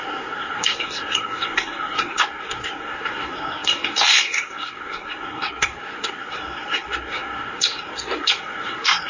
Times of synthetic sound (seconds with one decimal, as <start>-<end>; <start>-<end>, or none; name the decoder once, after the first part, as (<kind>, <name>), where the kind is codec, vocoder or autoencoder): 0.0-9.1 (codec, SNAC)